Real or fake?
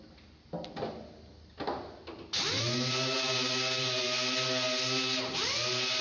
real